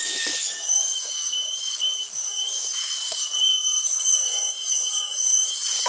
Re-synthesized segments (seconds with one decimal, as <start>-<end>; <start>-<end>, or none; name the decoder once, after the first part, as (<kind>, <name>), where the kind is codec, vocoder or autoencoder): 0.0-5.9 (codec, DAC)